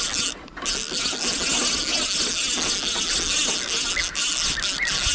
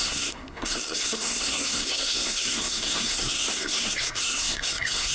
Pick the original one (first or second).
first